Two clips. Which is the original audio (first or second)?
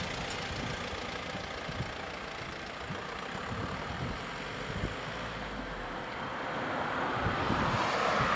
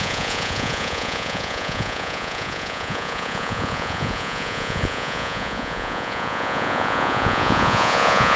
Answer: first